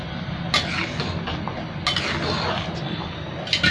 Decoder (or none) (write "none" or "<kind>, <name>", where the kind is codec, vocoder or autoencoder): none